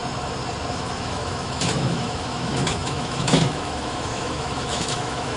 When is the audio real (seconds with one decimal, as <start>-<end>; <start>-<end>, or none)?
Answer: 0.0-0.7